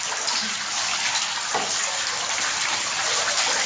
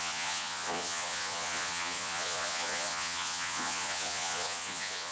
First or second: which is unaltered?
first